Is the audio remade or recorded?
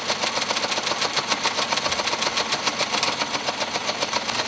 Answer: recorded